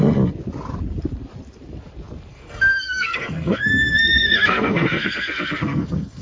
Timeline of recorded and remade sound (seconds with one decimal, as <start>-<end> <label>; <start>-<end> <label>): 0.0-2.3 recorded; 2.3-6.2 remade